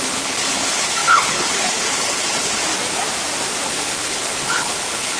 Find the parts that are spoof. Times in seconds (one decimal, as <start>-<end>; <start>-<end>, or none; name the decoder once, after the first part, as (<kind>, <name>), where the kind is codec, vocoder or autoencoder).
0.0-2.6 (codec, HILCodec); 3.7-5.2